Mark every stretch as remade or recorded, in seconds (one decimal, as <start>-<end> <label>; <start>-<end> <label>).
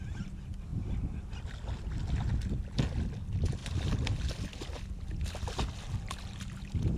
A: 0.0-7.0 recorded